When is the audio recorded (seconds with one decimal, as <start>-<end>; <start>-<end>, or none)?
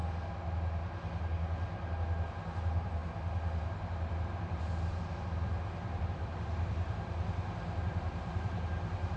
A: 0.0-2.3; 3.0-3.6